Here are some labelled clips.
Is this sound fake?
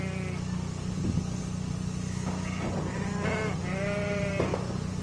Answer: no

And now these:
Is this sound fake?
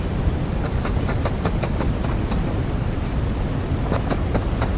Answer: no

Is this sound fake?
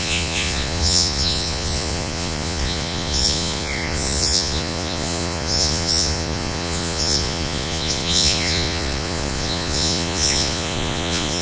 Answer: yes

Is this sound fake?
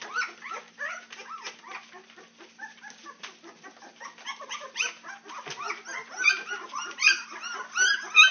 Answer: no